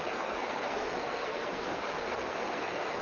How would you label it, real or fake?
fake